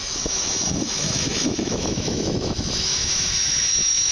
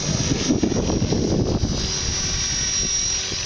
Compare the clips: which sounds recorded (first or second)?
second